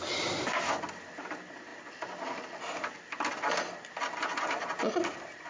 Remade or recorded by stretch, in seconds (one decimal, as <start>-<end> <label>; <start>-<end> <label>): 0.0-5.5 recorded